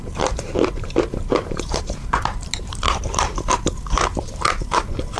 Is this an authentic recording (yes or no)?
no